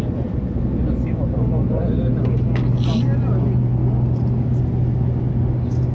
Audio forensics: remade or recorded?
recorded